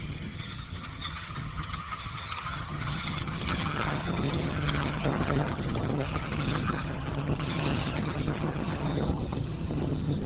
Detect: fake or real fake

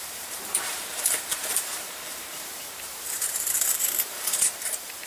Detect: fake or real fake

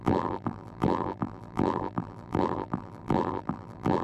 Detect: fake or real fake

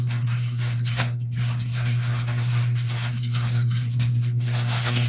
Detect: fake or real fake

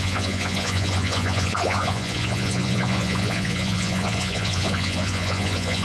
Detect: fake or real fake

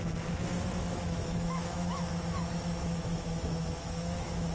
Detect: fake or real fake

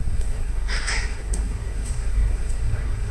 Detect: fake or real fake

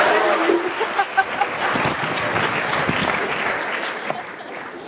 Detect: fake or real real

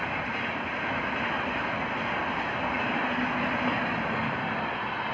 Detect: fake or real real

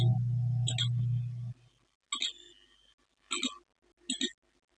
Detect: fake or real real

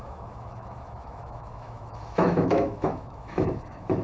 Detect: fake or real fake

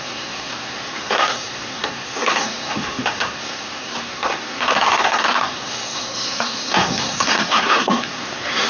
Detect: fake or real fake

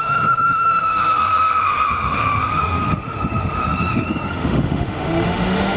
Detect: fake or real fake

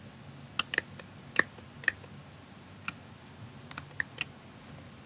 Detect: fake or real real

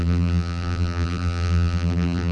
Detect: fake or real fake